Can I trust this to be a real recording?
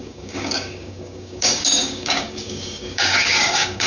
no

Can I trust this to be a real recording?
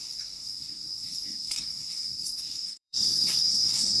no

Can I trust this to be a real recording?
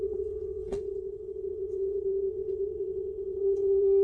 no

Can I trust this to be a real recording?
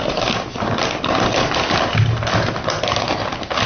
yes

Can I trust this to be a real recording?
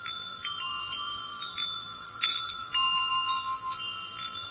no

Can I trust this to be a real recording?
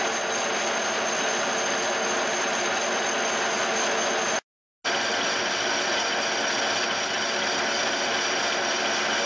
yes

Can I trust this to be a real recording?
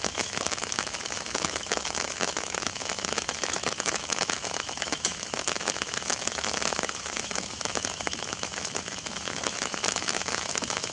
no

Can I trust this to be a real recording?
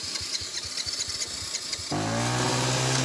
yes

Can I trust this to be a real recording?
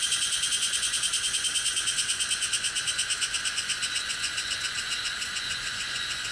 no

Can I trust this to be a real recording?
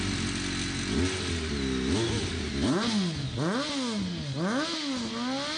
yes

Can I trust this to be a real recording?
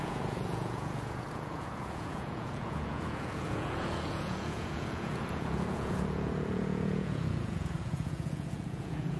no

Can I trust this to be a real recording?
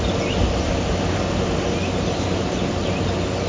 yes